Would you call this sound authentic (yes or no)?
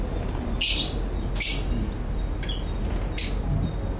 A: yes